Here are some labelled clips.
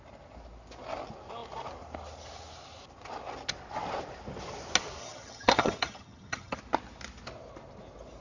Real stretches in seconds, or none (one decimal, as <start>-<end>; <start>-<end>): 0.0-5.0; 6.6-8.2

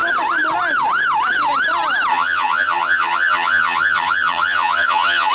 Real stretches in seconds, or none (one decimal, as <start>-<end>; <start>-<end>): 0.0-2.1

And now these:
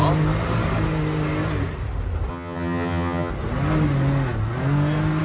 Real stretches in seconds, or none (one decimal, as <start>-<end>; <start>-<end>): 0.0-2.3; 3.3-5.2